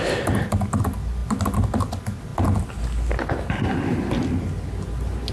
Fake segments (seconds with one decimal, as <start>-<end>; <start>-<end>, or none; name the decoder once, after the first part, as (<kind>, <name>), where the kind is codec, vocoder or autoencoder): none